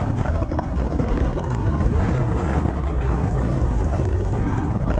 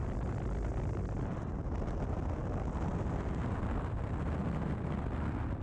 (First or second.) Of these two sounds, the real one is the second